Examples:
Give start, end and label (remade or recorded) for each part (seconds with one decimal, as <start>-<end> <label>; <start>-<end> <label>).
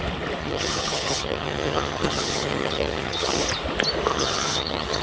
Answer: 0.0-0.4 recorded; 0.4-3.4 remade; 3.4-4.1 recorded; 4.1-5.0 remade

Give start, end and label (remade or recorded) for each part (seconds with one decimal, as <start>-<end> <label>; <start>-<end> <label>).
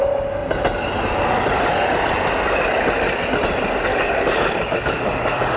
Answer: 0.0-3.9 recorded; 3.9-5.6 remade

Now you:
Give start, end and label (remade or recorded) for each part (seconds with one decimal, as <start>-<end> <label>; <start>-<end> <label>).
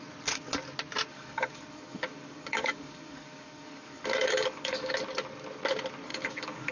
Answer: 0.0-1.1 recorded; 1.1-4.9 remade; 4.9-6.1 recorded; 6.1-6.7 remade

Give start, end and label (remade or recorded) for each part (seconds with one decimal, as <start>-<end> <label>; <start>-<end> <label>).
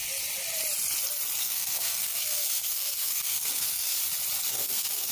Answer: 0.0-1.4 recorded; 1.4-4.0 remade; 4.0-4.5 recorded; 4.5-5.1 remade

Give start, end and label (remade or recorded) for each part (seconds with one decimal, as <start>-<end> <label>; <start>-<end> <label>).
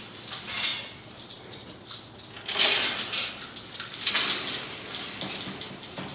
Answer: 0.0-6.1 recorded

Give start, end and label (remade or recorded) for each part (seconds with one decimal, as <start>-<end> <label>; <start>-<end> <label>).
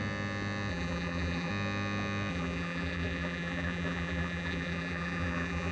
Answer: 0.0-0.7 recorded; 0.7-1.5 remade; 1.5-2.3 recorded; 2.3-5.7 remade